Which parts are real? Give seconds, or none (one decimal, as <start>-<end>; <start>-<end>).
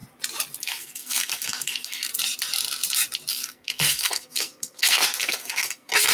0.0-0.6; 2.1-3.3